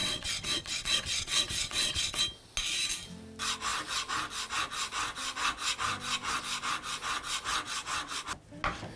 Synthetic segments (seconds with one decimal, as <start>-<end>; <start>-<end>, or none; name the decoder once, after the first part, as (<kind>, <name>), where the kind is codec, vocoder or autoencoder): 0.0-2.2 (vocoder, WaveNeXt); 7.5-8.2